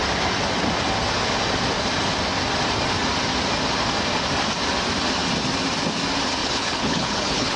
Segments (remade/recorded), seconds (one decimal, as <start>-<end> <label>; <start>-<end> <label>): 0.0-6.4 recorded; 6.4-7.6 remade